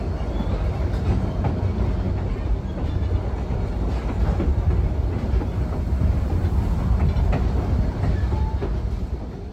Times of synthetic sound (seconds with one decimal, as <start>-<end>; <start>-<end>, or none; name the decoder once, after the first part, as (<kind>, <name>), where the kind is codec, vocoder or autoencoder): none